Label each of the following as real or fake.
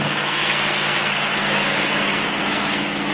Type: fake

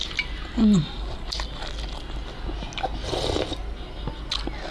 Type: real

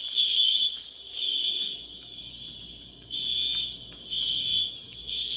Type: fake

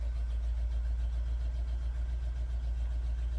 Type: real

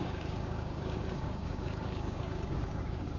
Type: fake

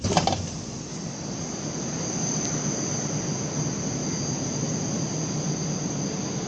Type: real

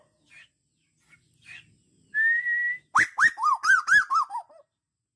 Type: real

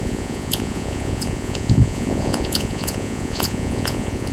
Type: fake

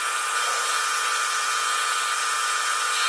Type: fake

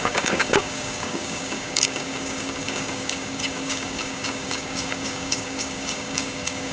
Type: fake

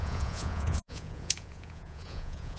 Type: fake